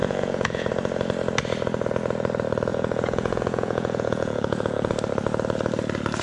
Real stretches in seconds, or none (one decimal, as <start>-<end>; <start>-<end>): 0.7-2.7; 4.9-6.2